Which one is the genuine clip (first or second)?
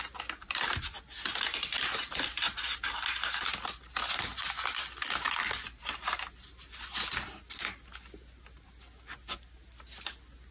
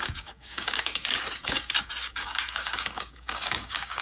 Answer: first